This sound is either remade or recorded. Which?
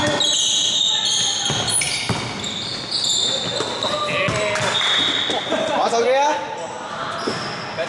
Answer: recorded